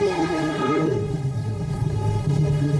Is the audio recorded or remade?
remade